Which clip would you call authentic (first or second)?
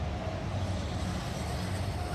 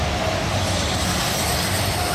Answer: first